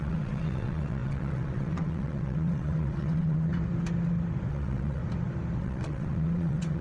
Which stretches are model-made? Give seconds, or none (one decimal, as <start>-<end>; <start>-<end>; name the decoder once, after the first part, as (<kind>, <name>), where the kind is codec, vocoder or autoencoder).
0.0-3.5 (vocoder, WaveNeXt); 4.5-5.0; 5.6-6.8